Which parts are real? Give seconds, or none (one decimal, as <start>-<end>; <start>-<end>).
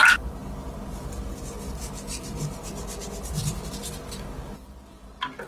0.0-5.5